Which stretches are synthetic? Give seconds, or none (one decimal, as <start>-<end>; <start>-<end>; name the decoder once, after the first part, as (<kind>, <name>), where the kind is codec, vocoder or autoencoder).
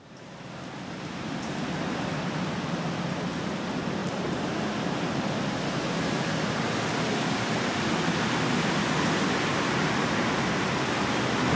none